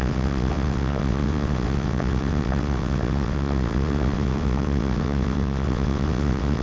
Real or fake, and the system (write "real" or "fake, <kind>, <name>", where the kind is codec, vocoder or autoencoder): fake, vocoder, WaveNeXt